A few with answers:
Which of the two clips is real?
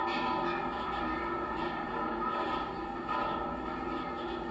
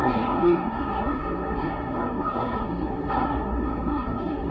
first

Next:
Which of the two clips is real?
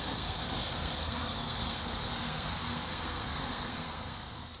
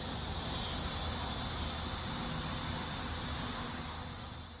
second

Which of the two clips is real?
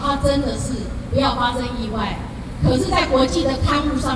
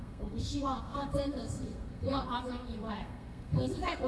first